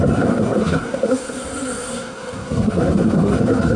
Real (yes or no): no